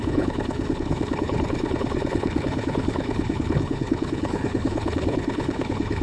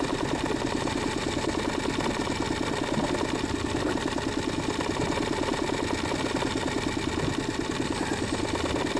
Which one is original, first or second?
second